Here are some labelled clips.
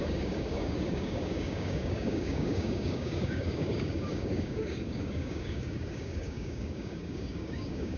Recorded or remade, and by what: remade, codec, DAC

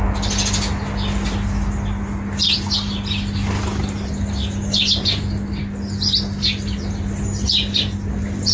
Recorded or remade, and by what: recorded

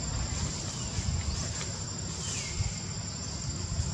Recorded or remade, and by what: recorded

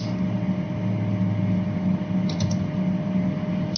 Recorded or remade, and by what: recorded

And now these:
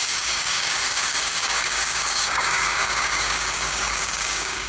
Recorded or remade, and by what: remade, codec, DAC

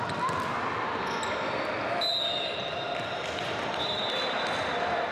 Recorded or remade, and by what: recorded